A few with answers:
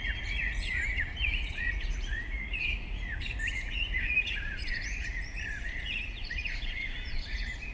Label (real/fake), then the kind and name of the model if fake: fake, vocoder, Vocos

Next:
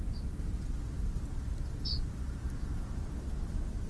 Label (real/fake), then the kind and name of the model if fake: real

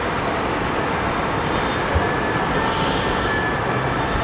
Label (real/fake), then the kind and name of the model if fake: real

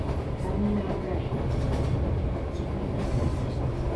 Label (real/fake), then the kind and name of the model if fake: real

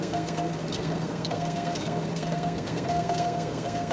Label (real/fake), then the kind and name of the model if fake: fake, codec, SNAC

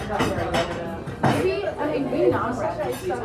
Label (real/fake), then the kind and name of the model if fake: real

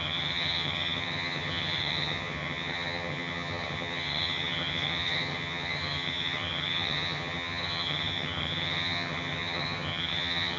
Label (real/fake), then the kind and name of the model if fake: fake, vocoder, HiFi-GAN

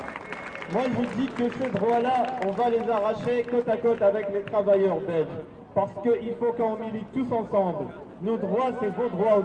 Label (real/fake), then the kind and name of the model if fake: real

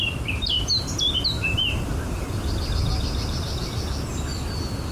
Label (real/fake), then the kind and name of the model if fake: real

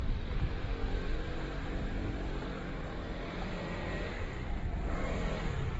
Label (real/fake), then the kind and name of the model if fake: fake, vocoder, BigVGAN v2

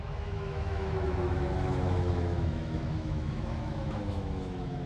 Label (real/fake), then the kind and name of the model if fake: fake, autoencoder, DAC-VAE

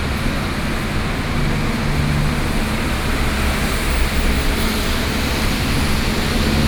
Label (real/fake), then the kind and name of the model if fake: real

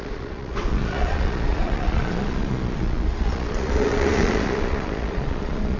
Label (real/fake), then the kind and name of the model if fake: fake, vocoder, Vocos